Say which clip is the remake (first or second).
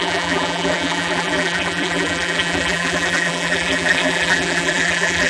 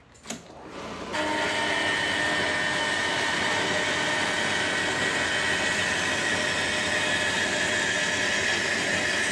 first